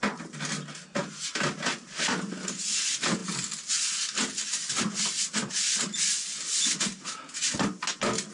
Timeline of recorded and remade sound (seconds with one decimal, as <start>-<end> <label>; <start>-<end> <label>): 0.0-8.3 recorded